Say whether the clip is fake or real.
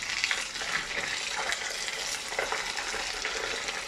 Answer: real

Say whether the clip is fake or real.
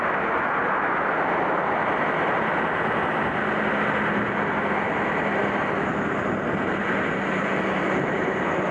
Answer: real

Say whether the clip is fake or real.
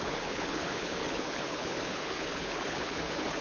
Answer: fake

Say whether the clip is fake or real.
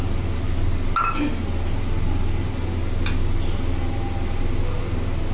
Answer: real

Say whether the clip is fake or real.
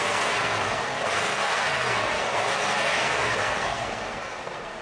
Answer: fake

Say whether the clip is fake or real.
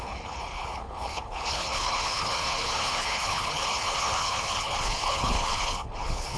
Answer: fake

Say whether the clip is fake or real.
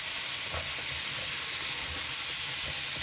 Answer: real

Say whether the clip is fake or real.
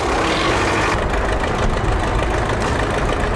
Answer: real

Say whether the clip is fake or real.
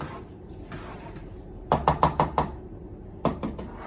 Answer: real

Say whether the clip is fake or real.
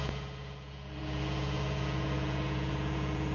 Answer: fake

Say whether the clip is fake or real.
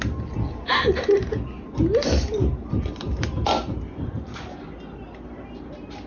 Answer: real